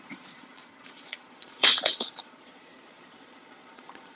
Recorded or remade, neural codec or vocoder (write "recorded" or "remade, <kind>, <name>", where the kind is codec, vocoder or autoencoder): remade, vocoder, Vocos